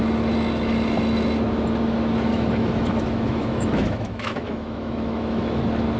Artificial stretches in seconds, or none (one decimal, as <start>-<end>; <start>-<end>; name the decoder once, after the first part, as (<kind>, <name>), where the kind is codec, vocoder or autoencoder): 2.3-5.6 (autoencoder, DAC-VAE)